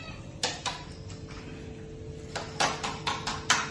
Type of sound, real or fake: real